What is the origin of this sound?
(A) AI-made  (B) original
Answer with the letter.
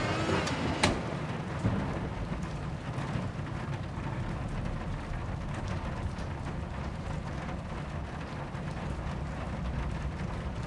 B